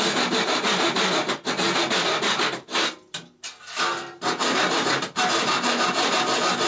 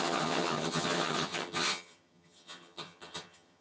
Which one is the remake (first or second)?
second